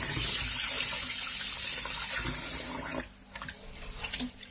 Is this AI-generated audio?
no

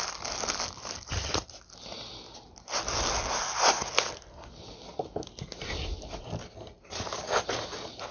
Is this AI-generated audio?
no